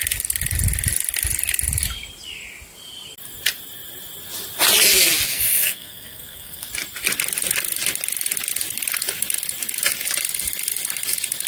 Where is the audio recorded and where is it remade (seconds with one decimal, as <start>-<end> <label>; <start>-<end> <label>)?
0.0-5.3 recorded; 5.3-6.7 remade; 6.7-11.5 recorded